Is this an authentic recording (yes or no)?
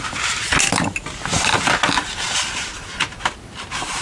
yes